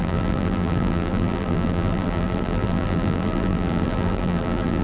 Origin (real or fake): fake